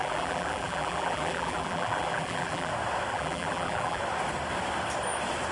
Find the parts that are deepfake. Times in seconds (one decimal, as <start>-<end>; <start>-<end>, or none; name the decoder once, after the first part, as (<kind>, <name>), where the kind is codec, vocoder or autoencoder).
0.0-2.7 (vocoder, BigVGAN v2); 3.1-4.0